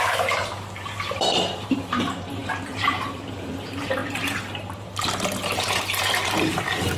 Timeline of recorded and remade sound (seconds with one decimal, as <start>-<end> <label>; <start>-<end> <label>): 0.0-7.0 remade